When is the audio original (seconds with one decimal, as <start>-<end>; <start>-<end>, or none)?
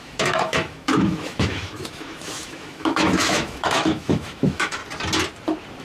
4.8-5.8